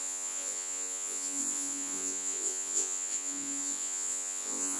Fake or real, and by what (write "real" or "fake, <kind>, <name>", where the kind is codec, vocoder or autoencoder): fake, vocoder, Vocos